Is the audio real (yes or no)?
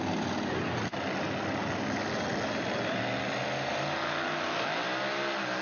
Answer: yes